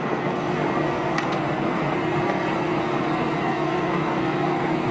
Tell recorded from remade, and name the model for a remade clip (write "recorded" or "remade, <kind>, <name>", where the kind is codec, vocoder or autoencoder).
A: remade, codec, SNAC